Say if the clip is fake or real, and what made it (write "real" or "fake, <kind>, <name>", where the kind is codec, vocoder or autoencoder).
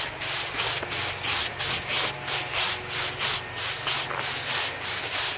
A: real